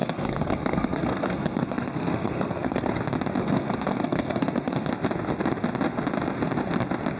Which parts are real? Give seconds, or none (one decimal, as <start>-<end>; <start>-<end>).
2.9-3.4; 4.9-7.2